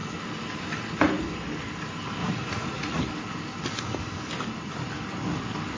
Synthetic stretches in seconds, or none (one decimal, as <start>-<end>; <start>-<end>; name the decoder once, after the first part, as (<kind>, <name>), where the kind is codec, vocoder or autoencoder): 2.2-3.0 (vocoder, Vocos)